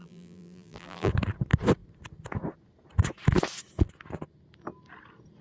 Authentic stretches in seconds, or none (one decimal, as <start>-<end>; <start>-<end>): 1.1-5.4